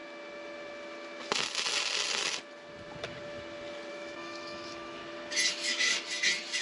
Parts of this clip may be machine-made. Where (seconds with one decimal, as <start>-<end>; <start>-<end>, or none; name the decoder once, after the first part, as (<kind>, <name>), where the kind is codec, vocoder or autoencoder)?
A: 3.9-5.0 (autoencoder, DAC-VAE); 5.5-5.9